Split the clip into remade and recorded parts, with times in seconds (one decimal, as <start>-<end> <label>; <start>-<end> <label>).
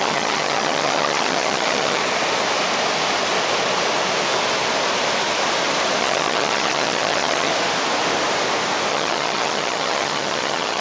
0.0-2.0 remade; 2.0-6.0 recorded; 6.0-7.5 remade; 7.5-8.9 recorded; 8.9-10.8 remade